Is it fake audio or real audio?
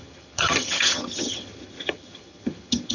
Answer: fake